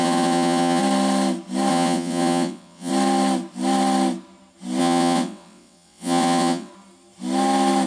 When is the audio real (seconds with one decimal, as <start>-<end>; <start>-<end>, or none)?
0.8-1.7; 2.9-4.8; 6.7-7.9